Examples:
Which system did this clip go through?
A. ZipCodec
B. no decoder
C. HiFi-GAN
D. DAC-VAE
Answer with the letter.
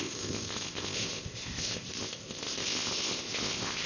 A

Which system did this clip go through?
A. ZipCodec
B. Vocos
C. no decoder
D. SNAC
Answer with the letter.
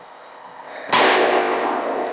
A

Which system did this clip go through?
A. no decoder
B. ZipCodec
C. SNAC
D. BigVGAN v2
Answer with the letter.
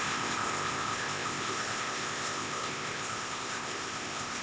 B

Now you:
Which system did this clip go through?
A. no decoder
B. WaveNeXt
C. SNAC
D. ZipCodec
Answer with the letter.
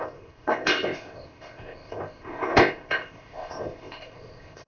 D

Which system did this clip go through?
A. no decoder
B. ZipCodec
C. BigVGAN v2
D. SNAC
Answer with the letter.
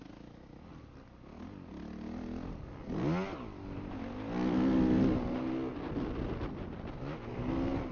A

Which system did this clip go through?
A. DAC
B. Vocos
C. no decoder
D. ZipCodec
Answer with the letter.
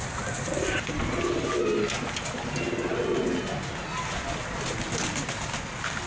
C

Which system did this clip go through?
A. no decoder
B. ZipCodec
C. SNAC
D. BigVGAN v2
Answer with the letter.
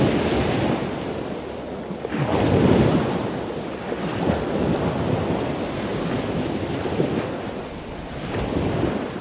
A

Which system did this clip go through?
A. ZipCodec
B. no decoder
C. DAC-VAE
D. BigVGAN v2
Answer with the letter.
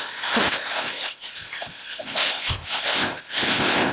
A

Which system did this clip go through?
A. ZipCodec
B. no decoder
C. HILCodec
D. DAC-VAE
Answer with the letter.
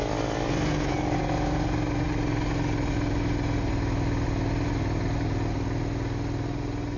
B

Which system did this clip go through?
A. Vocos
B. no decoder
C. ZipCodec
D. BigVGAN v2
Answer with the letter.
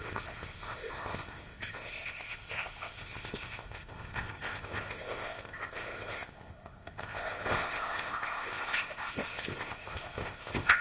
C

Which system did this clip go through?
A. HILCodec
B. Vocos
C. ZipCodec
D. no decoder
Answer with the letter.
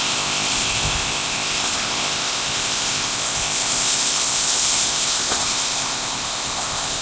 C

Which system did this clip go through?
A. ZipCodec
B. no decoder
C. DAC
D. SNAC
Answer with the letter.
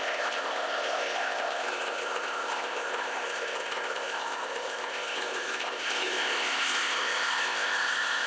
A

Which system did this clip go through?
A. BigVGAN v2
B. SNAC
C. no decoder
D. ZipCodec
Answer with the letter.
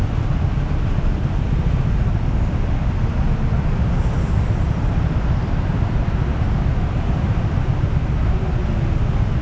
C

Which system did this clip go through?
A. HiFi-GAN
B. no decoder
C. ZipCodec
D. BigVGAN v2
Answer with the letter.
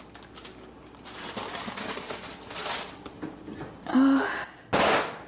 B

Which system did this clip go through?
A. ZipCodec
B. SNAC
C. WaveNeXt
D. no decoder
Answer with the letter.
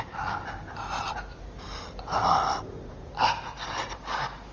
D